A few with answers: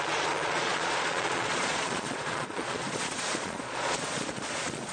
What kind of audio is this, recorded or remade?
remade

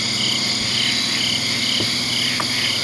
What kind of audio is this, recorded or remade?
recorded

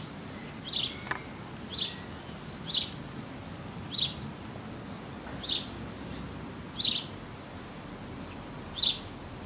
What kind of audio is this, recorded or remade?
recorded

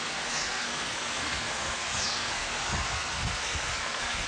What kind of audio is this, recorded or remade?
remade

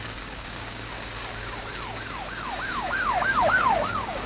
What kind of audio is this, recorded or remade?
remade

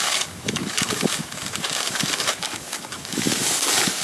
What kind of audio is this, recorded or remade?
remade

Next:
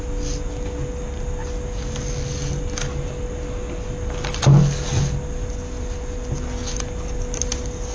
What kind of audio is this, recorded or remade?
recorded